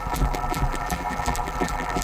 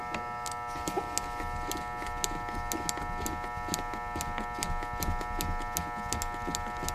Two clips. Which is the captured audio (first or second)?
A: second